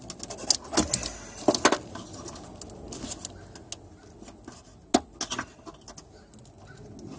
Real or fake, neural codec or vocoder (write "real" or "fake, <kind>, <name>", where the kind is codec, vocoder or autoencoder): real